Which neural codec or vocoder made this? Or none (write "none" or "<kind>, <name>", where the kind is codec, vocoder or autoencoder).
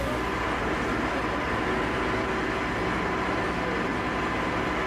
none